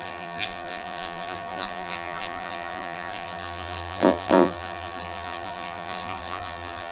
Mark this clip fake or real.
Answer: fake